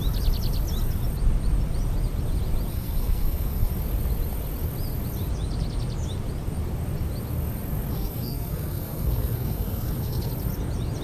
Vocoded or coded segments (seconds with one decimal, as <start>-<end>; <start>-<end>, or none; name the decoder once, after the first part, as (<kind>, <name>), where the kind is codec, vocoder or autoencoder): 2.7-3.7 (codec, SNAC); 7.9-10.3